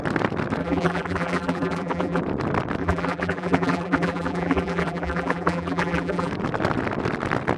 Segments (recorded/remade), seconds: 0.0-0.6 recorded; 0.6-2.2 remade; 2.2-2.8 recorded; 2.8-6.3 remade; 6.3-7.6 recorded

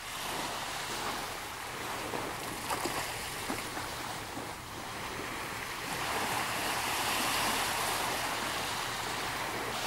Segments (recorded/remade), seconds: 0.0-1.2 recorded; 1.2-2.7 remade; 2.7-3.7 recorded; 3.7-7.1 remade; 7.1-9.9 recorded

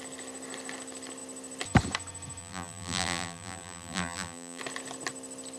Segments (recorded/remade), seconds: 0.0-2.4 recorded; 2.4-4.6 remade; 4.6-5.6 recorded